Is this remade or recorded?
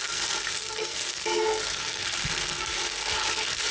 remade